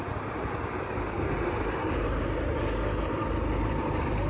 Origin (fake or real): real